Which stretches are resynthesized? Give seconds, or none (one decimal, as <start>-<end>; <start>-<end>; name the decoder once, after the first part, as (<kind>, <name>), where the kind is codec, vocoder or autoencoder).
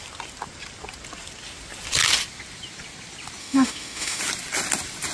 3.4-4.2 (autoencoder, DAC-VAE)